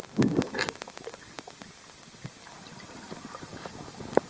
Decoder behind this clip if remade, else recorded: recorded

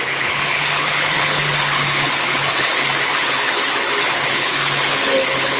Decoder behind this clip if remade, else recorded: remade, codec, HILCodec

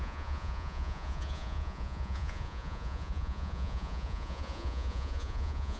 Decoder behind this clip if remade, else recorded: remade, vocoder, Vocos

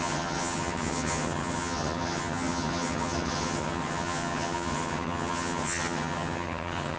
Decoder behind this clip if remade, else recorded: remade, vocoder, HiFi-GAN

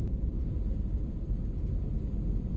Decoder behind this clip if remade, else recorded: recorded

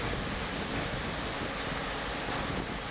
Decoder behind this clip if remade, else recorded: recorded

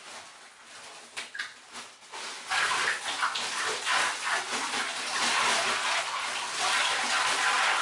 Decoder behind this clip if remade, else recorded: recorded